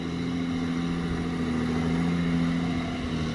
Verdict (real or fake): real